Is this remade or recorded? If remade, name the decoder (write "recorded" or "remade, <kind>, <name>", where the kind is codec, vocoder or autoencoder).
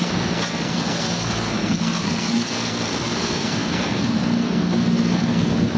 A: remade, codec, SNAC